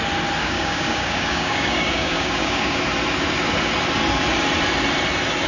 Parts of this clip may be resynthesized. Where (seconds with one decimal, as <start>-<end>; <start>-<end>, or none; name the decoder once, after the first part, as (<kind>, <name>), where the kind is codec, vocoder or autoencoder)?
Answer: 0.4-2.8 (codec, DAC)